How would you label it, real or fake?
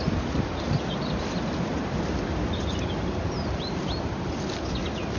real